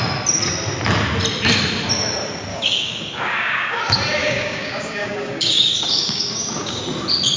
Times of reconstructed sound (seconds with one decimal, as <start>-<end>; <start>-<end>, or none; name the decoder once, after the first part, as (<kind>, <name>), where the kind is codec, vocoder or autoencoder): 2.5-3.8 (codec, DAC); 4.2-6.8